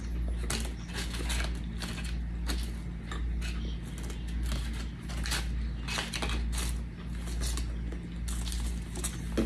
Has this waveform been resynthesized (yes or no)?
no